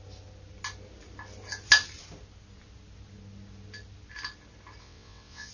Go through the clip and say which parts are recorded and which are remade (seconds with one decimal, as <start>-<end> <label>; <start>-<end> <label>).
0.0-4.8 recorded; 4.8-5.5 remade